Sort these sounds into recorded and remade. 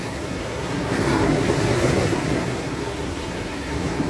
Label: remade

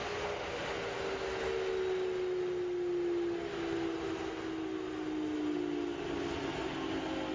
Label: recorded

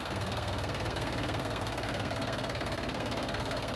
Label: remade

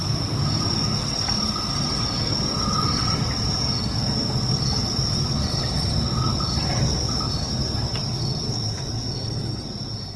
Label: recorded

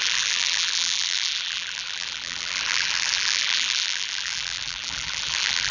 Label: remade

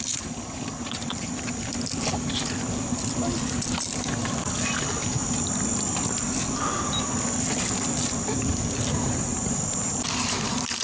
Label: remade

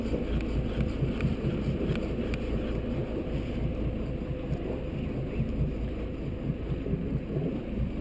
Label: recorded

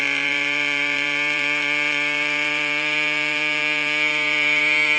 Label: remade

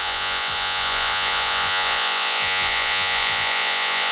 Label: remade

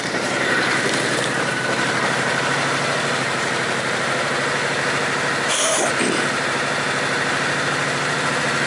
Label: remade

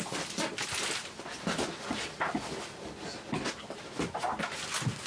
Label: recorded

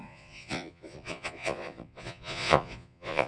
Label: remade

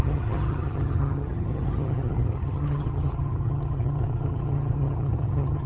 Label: remade